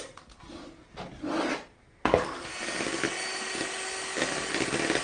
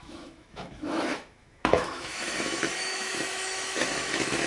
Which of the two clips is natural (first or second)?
first